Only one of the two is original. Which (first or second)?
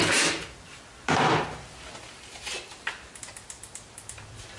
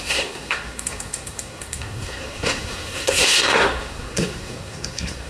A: first